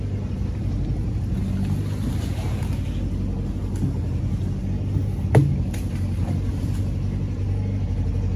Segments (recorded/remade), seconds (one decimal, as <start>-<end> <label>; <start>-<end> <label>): 0.0-8.4 recorded